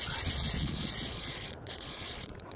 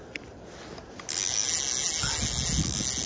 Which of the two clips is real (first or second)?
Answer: second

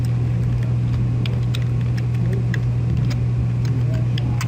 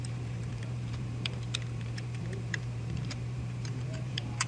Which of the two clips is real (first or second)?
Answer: first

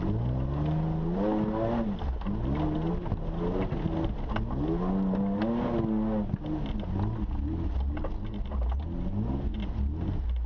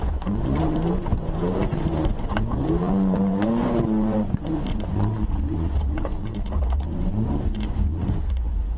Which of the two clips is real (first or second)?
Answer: first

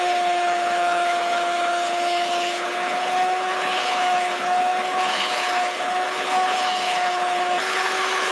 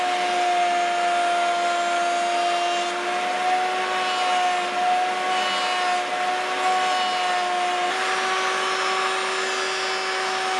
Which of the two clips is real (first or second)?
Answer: second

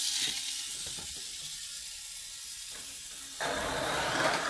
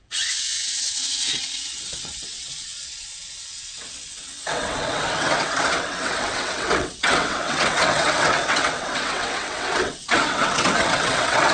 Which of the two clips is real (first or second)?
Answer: first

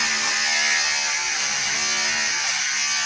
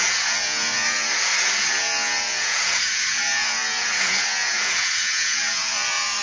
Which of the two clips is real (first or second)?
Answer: first